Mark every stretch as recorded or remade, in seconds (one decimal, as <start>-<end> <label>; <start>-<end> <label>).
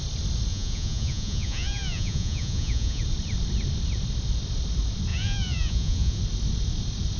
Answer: 0.0-0.5 recorded; 0.5-3.0 remade; 3.0-5.1 recorded; 5.1-6.2 remade; 6.2-7.2 recorded